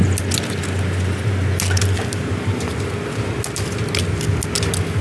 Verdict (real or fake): real